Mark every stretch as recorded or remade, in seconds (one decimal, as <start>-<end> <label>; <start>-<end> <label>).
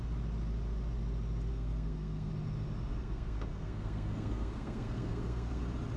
0.0-1.5 recorded; 1.5-2.3 remade; 2.3-3.0 recorded; 3.0-5.6 remade; 5.6-6.0 recorded